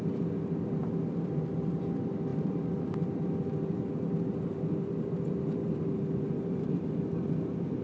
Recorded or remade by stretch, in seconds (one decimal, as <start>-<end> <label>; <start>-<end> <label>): 0.0-0.8 recorded; 0.8-1.4 remade; 1.4-2.3 recorded; 2.3-7.0 remade; 7.0-7.8 recorded